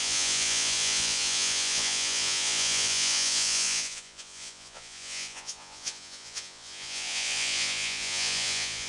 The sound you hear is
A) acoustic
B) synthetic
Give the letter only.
B